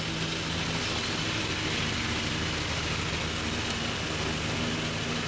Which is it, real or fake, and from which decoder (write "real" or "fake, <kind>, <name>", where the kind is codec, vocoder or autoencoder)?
real